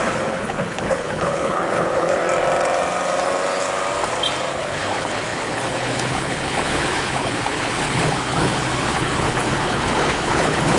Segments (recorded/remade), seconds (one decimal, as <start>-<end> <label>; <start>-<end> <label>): 0.0-2.2 remade; 2.2-4.5 recorded; 4.5-10.8 remade